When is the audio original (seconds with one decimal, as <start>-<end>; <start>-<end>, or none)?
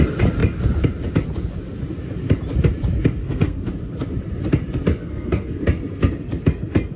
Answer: 0.0-3.2; 3.7-4.9; 5.6-7.0